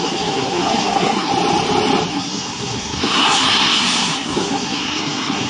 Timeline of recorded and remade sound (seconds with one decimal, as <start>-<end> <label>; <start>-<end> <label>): 0.0-1.3 remade; 1.3-2.1 recorded; 2.1-5.5 remade